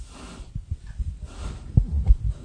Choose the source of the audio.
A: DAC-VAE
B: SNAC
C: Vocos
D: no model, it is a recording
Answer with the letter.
D